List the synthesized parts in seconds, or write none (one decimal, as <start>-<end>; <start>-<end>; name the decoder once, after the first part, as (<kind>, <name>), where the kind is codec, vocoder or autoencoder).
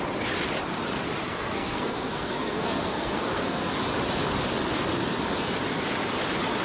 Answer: 1.2-3.7 (codec, SNAC)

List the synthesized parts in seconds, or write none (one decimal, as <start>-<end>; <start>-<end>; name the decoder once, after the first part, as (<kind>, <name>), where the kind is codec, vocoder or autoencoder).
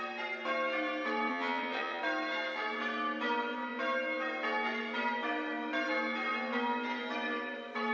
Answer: 1.3-2.0 (vocoder, WaveNeXt)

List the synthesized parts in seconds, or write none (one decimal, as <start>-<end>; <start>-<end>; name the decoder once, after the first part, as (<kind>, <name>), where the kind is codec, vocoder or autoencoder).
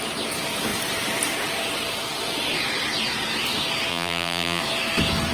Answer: 3.9-4.6 (vocoder, BigVGAN v2)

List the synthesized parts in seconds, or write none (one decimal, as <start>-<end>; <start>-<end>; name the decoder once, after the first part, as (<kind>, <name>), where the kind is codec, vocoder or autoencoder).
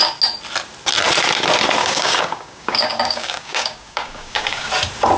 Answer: 1.8-4.7 (codec, DAC)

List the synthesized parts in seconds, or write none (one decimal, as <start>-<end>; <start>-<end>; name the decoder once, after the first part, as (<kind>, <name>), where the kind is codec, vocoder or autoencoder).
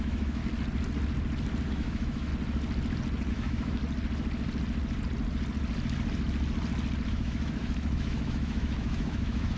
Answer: 0.0-0.4 (autoencoder, DAC-VAE); 1.7-2.3; 3.3-3.8; 7.1-9.6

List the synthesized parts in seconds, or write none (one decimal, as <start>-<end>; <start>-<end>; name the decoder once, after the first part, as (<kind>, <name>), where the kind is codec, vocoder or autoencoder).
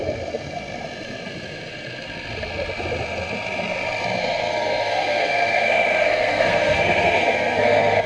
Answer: 4.2-8.1 (codec, SNAC)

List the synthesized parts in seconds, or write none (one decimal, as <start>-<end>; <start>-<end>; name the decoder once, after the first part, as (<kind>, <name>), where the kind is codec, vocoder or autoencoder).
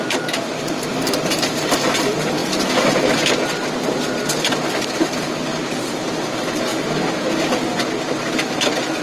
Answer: 0.0-2.4 (vocoder, BigVGAN v2); 4.7-6.7; 7.4-9.0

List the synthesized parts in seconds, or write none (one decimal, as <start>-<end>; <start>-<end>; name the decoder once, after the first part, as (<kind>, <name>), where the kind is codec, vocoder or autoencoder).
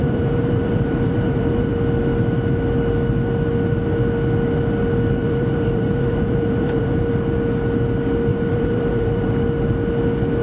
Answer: 0.0-1.7 (vocoder, BigVGAN v2); 5.2-7.1; 8.3-9.3